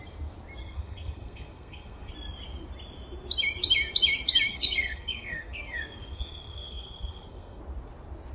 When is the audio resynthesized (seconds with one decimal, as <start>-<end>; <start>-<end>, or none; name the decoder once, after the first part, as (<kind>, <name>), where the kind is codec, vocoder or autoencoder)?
0.6-2.1 (codec, SNAC); 4.5-7.6